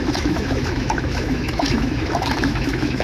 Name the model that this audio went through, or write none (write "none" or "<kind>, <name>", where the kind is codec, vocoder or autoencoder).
autoencoder, DAC-VAE